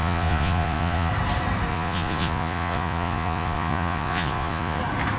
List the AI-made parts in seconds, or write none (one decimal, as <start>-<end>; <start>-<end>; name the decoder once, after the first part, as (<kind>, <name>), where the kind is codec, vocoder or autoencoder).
0.0-1.1 (vocoder, Vocos); 1.7-4.8